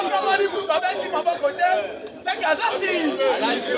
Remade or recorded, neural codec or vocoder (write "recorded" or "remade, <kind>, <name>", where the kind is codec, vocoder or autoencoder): recorded